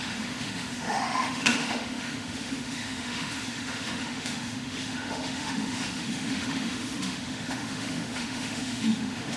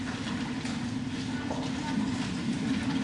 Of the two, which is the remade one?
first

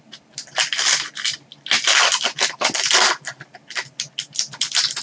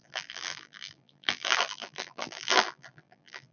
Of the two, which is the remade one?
second